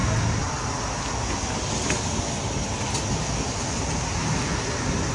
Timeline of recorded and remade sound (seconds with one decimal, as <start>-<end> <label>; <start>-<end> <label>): 0.0-5.1 recorded